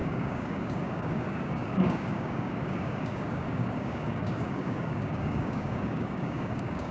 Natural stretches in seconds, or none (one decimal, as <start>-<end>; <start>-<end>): none